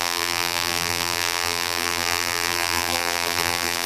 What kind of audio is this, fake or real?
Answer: fake